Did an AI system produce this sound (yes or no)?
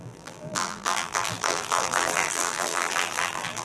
yes